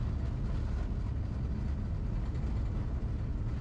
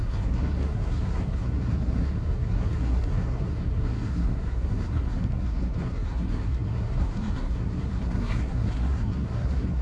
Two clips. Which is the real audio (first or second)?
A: first